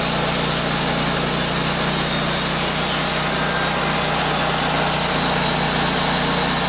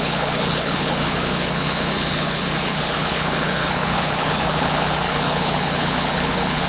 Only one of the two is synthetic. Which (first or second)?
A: second